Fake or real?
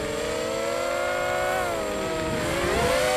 real